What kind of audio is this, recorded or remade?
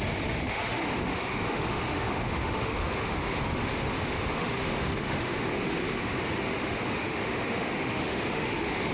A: remade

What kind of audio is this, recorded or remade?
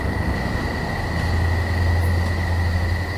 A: recorded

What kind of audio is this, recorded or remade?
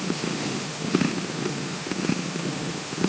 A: remade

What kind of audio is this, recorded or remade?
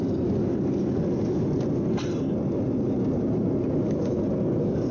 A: recorded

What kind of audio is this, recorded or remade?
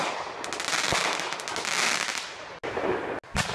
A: recorded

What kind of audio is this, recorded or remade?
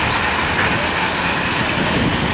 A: recorded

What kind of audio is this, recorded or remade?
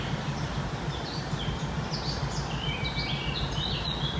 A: recorded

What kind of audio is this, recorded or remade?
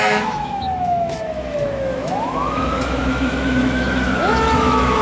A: remade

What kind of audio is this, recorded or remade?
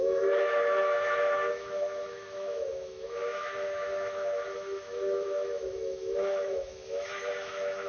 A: remade